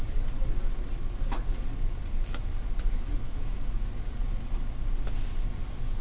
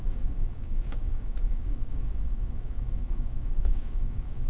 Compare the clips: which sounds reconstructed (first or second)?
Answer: second